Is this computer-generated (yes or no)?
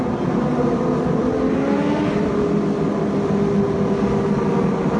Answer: no